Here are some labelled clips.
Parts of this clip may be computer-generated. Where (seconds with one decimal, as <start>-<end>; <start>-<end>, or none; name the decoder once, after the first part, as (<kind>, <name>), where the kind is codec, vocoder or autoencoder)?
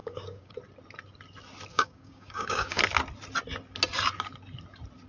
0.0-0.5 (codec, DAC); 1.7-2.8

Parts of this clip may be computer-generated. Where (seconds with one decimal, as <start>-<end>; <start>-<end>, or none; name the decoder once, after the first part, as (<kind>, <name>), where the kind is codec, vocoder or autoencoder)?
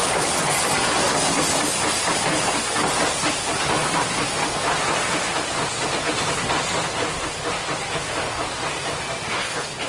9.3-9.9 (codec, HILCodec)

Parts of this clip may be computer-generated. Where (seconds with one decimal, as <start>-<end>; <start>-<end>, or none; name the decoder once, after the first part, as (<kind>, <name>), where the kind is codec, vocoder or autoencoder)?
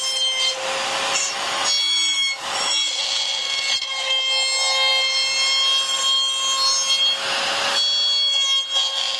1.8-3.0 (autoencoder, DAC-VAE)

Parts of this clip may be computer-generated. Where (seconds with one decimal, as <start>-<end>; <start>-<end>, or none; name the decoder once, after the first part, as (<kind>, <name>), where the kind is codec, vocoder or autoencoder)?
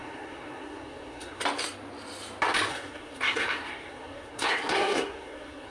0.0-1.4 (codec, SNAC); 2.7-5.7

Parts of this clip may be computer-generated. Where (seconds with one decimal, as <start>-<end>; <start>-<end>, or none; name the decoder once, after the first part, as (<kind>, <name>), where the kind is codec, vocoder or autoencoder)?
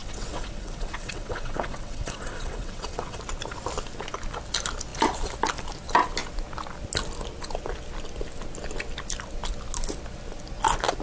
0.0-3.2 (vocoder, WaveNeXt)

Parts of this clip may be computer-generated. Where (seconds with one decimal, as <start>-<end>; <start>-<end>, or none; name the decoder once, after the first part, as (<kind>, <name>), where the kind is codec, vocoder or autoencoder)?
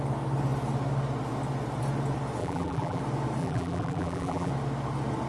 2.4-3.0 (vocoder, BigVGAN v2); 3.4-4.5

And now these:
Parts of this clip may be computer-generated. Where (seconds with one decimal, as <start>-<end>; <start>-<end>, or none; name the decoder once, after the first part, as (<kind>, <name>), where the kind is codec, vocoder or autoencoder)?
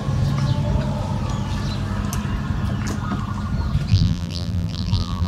3.9-5.3 (vocoder, BigVGAN v2)